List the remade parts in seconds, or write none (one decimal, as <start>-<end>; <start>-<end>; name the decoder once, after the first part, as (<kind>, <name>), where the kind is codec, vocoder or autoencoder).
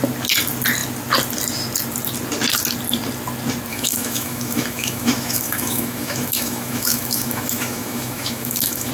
3.7-8.9 (autoencoder, DAC-VAE)